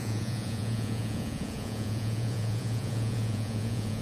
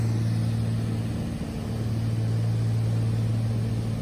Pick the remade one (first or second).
first